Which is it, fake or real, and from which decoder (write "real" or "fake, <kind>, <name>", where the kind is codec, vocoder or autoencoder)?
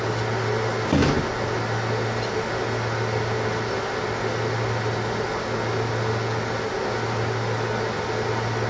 real